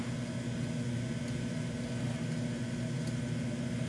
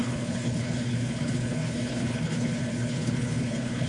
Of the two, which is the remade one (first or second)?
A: second